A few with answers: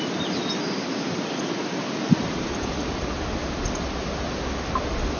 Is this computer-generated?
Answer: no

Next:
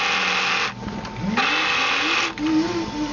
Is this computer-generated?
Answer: no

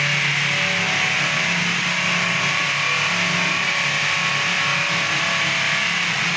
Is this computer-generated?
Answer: no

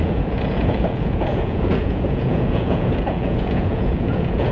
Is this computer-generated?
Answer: yes